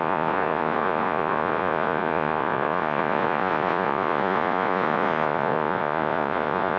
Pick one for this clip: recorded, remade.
remade